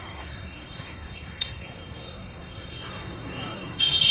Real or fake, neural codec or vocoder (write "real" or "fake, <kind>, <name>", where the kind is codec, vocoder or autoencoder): fake, codec, SNAC